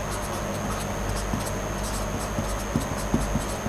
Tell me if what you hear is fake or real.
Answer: real